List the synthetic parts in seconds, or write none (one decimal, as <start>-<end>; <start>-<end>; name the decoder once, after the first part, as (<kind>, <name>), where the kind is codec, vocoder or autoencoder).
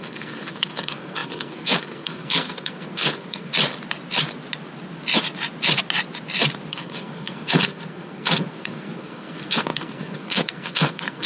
0.0-3.5 (codec, SNAC); 6.7-11.3